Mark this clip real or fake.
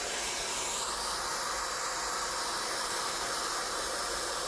real